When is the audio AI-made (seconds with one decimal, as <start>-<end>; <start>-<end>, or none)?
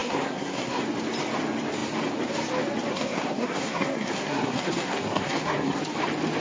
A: 0.0-0.8; 2.9-5.8